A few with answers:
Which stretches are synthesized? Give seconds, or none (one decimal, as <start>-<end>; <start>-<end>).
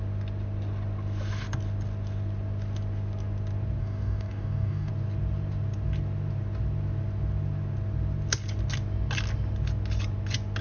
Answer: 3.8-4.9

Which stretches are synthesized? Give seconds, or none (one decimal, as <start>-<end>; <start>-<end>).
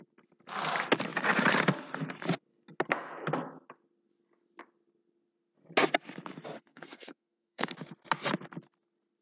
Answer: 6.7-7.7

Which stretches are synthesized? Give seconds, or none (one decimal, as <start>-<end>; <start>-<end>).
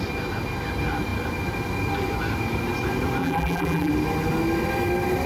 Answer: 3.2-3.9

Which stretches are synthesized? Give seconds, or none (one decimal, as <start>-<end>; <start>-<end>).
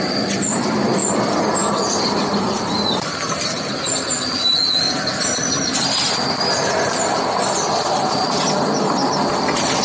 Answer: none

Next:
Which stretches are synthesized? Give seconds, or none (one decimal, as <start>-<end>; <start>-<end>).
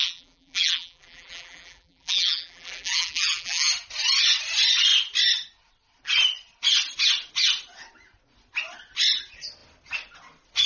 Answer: 0.0-3.7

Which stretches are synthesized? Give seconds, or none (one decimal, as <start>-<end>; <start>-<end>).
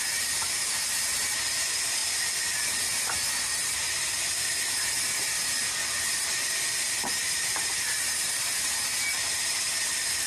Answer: none